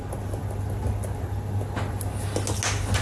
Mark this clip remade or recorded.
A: recorded